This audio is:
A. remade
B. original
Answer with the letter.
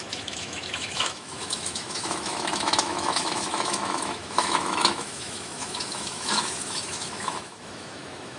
A